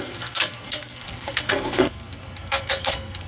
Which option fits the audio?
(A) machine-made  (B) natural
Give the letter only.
A